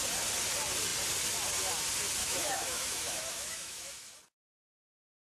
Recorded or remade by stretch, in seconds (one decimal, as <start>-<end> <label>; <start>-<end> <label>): 0.0-2.2 recorded; 2.2-4.2 remade; 4.2-5.3 recorded